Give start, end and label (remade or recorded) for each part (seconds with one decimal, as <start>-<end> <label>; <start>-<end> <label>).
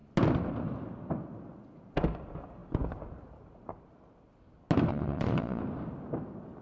0.0-4.9 recorded; 4.9-5.6 remade; 5.6-6.6 recorded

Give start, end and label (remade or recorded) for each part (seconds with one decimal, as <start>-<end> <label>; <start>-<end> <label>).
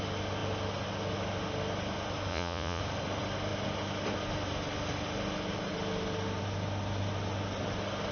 0.0-2.3 recorded; 2.3-2.8 remade; 2.8-8.1 recorded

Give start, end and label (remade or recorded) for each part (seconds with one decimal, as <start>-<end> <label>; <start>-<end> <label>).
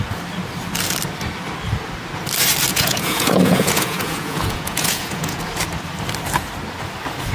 0.0-2.7 recorded; 2.7-5.4 remade; 5.4-7.3 recorded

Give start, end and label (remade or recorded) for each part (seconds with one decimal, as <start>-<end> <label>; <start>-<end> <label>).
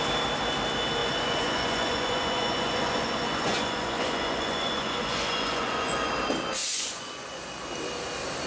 0.0-1.0 recorded; 1.0-6.1 remade; 6.1-6.6 recorded; 6.6-7.4 remade; 7.4-8.5 recorded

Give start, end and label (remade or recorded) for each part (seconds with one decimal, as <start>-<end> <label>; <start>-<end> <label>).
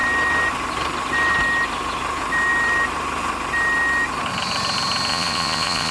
0.0-5.1 recorded; 5.1-5.9 remade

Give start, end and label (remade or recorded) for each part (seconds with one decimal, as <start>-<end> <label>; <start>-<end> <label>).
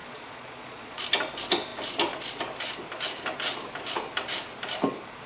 0.0-1.0 remade; 1.0-5.3 recorded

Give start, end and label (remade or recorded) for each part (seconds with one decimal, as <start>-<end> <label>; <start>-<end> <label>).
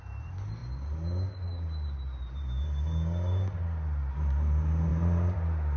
0.0-5.8 recorded